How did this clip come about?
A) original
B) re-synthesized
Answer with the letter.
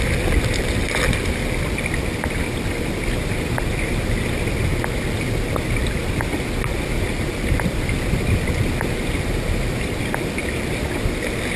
A